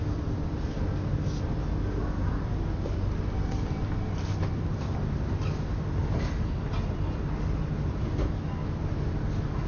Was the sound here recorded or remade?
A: recorded